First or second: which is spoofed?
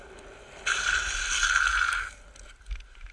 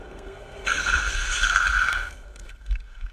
second